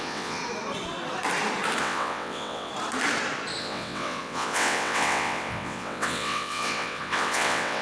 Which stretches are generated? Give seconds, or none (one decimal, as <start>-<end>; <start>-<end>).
0.0-0.4; 1.8-2.7; 3.6-7.8